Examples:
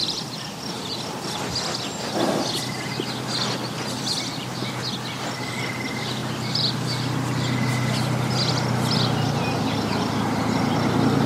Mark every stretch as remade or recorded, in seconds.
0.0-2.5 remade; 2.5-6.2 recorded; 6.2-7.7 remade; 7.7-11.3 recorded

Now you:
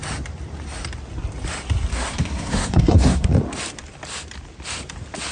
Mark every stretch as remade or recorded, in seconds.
0.0-1.9 recorded; 1.9-3.3 remade; 3.3-5.3 recorded

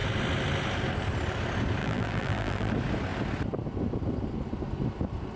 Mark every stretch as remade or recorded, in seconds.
0.0-1.8 recorded; 1.8-2.7 remade; 2.7-5.4 recorded